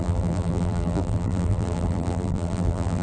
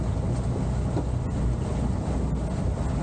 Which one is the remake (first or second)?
first